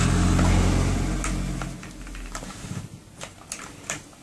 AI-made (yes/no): yes